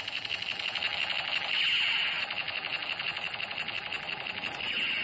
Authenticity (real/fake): real